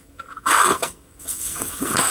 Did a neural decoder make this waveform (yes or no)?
yes